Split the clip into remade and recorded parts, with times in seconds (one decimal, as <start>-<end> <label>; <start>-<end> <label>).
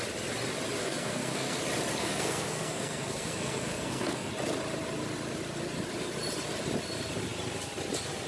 0.0-0.8 recorded; 0.8-1.6 remade; 1.6-2.0 recorded; 2.0-4.3 remade; 4.3-8.3 recorded